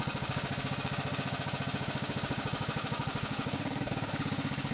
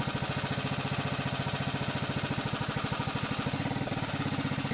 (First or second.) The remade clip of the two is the first